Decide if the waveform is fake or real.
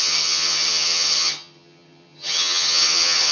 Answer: fake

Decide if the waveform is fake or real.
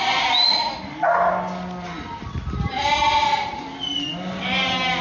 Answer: real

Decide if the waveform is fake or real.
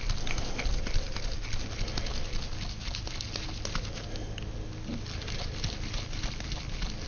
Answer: real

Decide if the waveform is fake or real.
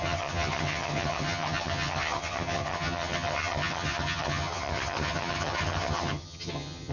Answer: fake